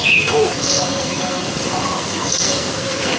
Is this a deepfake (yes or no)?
yes